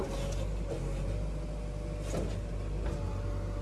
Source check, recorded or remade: recorded